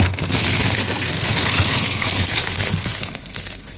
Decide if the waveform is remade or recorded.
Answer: remade